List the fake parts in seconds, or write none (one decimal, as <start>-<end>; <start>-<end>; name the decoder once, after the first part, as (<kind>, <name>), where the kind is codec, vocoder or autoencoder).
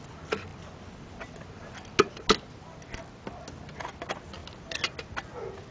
none